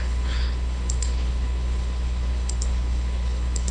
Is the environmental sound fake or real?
fake